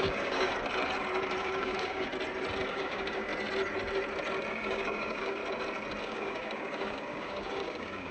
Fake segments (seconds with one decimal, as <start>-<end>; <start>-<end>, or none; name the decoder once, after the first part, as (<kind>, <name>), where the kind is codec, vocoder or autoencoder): 0.0-0.5 (codec, DAC); 1.4-2.1; 2.7-3.3; 4.5-5.4; 6.0-8.1